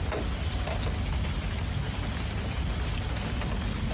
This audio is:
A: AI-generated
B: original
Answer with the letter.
B